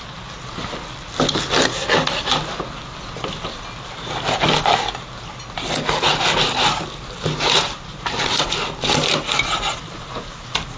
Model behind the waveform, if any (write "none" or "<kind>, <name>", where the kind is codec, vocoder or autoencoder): none